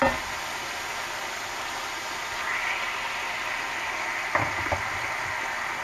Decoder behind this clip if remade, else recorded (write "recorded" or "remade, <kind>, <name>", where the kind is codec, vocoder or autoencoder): recorded